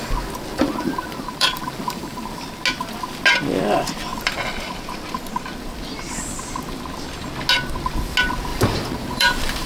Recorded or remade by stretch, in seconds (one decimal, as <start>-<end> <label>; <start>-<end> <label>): 0.0-0.5 recorded; 0.5-2.4 remade; 2.4-8.5 recorded; 8.5-9.7 remade